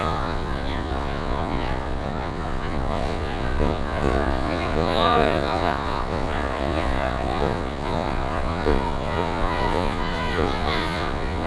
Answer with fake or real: fake